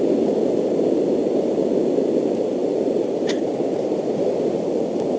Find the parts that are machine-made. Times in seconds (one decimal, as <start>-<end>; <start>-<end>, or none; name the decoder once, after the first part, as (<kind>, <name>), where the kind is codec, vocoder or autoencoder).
0.0-2.6 (vocoder, BigVGAN v2); 3.1-5.2